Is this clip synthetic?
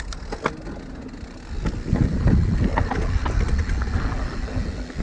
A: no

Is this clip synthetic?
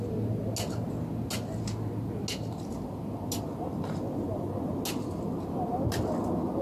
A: no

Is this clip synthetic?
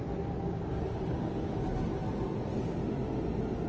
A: no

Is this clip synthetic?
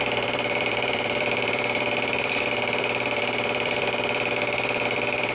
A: yes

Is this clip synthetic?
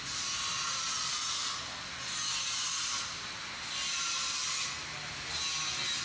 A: no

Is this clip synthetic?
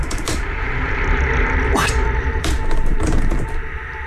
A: yes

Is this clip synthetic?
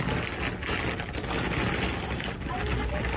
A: no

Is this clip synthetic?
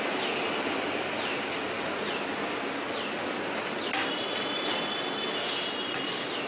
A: no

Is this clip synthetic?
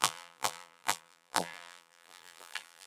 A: yes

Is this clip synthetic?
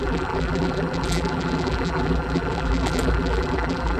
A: yes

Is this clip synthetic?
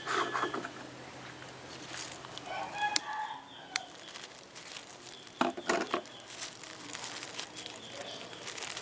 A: no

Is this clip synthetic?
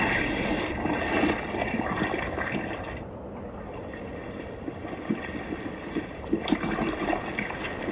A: no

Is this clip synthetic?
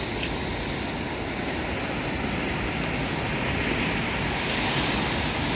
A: no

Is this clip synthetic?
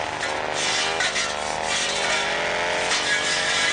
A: no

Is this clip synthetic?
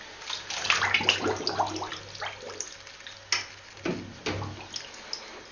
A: no